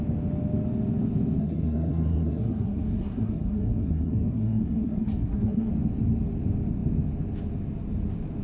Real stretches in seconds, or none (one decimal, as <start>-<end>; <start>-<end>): 0.0-1.4; 5.7-8.4